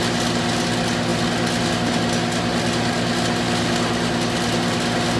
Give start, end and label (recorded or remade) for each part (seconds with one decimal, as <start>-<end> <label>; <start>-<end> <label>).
0.0-5.2 recorded